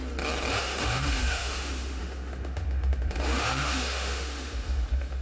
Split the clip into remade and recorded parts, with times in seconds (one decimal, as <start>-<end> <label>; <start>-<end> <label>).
0.0-0.5 recorded; 0.5-5.2 remade